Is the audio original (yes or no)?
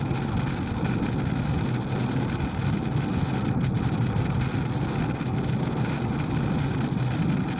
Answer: yes